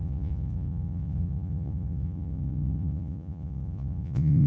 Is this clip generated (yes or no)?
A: yes